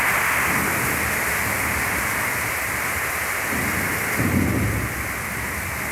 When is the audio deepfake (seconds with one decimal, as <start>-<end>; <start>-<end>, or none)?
1.4-3.5